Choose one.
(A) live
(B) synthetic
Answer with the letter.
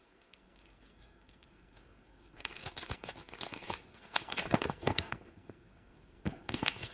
B